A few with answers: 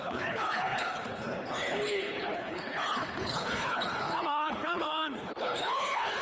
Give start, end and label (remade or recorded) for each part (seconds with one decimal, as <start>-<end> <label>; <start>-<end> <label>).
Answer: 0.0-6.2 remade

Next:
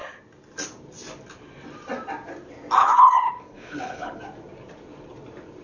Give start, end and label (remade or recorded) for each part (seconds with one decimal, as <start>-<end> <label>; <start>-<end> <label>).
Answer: 0.0-2.8 recorded; 2.8-4.2 remade; 4.2-5.6 recorded

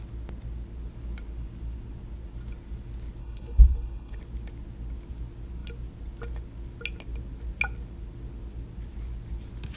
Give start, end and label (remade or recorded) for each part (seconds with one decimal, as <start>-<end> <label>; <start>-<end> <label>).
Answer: 0.0-3.2 recorded; 3.2-4.2 remade; 4.2-9.8 recorded

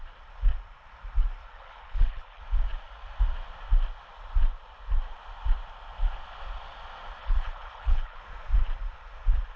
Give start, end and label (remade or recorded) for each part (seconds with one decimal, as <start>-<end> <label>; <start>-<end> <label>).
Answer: 0.0-1.4 recorded; 1.4-2.4 remade; 2.4-7.2 recorded; 7.2-8.2 remade; 8.2-9.6 recorded

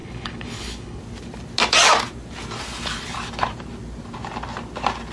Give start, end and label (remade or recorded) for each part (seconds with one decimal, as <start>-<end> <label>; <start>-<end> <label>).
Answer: 0.0-1.0 remade; 1.0-5.1 recorded

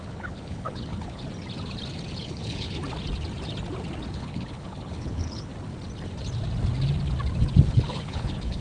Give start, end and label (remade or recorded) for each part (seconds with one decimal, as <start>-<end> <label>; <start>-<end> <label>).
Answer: 0.0-1.2 remade; 1.2-2.2 recorded; 2.2-2.8 remade; 2.8-4.1 recorded; 4.1-5.5 remade; 5.5-7.7 recorded; 7.7-8.6 remade

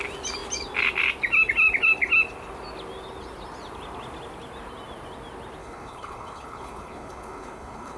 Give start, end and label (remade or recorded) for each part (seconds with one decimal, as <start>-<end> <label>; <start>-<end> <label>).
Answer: 0.0-5.6 recorded; 5.6-8.0 remade